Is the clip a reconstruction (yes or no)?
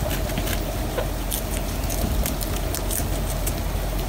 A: no